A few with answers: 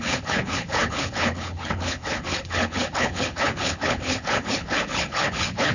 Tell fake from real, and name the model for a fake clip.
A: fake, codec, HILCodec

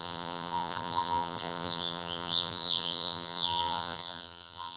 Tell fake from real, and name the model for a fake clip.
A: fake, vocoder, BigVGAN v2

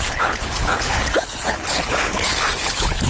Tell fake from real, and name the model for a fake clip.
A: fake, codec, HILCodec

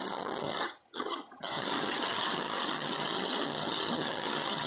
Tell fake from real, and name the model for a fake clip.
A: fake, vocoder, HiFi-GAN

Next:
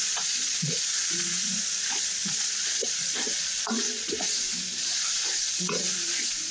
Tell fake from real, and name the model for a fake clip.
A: fake, vocoder, Vocos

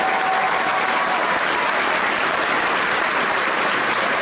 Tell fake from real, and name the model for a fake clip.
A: real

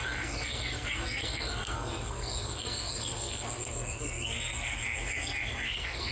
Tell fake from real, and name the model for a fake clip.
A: fake, codec, SNAC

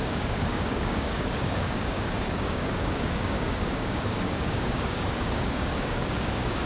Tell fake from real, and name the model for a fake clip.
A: fake, codec, DAC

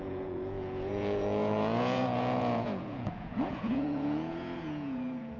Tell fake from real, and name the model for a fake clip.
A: fake, vocoder, Vocos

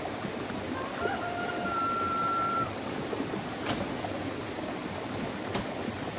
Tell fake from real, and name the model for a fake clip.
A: real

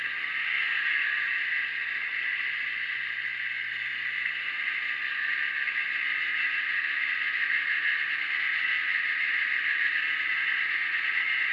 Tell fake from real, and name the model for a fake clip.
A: real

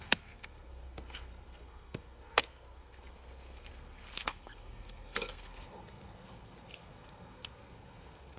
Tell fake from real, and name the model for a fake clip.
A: fake, codec, SNAC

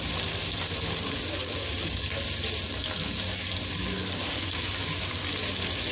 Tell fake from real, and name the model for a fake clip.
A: real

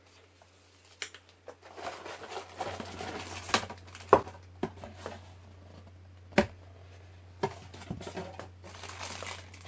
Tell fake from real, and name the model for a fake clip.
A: real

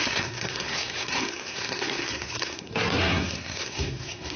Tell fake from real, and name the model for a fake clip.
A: fake, codec, SNAC